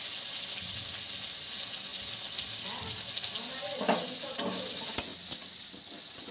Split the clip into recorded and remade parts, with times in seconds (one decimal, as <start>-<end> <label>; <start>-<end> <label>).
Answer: 0.0-6.3 recorded